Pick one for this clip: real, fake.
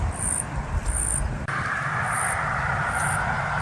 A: real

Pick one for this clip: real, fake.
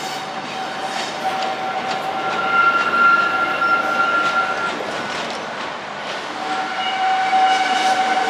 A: real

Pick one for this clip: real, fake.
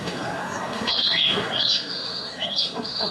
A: fake